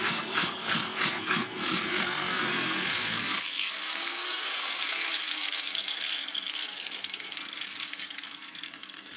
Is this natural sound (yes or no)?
no